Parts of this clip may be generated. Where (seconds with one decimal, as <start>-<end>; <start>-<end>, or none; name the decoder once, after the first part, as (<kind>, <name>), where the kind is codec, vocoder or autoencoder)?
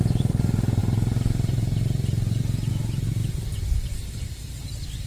none